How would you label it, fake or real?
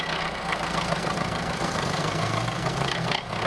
fake